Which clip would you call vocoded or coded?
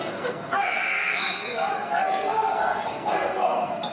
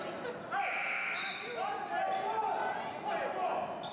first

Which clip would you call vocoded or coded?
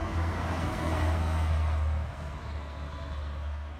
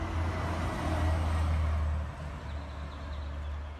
first